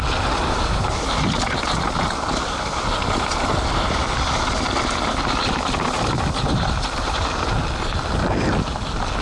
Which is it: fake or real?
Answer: real